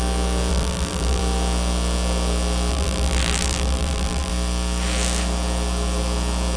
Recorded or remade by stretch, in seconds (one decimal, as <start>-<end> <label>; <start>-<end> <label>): 0.0-0.5 recorded; 0.5-1.2 remade; 1.2-2.7 recorded; 2.7-4.3 remade; 4.3-6.6 recorded